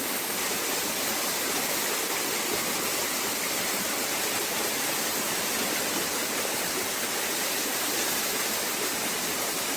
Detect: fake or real real